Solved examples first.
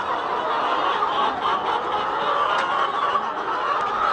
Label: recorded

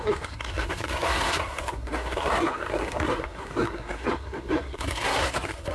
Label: remade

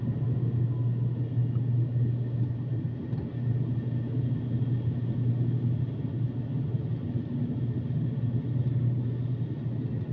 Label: recorded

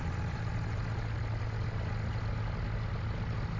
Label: recorded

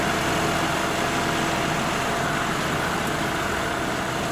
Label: recorded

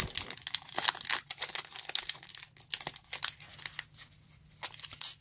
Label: recorded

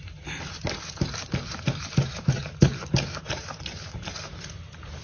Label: remade